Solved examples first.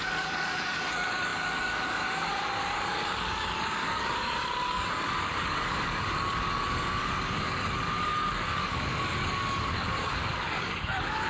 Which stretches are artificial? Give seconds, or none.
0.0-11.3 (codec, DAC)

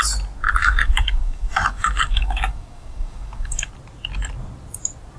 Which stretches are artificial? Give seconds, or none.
0.6-3.7 (codec, DAC)

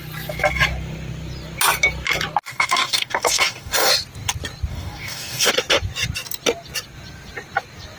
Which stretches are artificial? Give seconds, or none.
2.5-3.9 (codec, DAC); 4.7-5.5

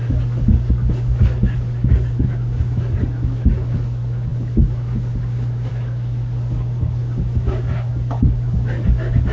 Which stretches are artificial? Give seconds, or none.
0.0-9.3 (codec, DAC)

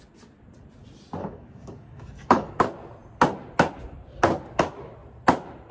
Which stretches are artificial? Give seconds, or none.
1.2-2.6 (codec, DAC)

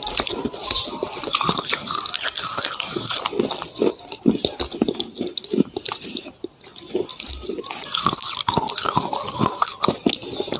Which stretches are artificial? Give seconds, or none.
none

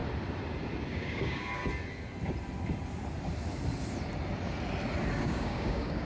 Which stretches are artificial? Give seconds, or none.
0.9-1.6 (codec, DAC); 5.2-6.0

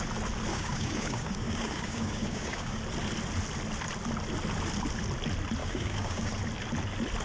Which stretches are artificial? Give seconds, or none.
0.5-2.8 (codec, DAC); 5.6-6.3